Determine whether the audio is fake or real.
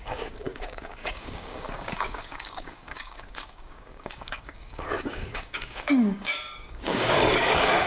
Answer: fake